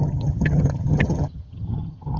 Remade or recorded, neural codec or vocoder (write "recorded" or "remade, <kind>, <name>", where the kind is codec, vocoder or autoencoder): remade, vocoder, HiFi-GAN